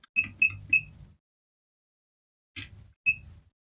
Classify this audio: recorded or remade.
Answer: recorded